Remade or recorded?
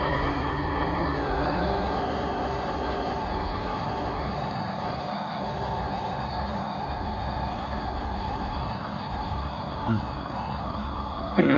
remade